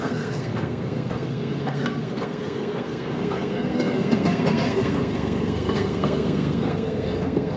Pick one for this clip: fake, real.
fake